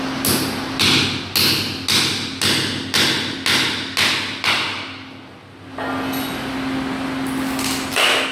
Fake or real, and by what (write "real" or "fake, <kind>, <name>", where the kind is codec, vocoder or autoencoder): real